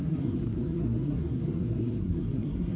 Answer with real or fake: fake